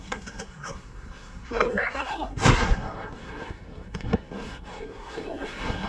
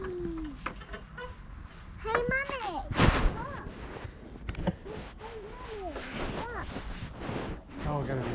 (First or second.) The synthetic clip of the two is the first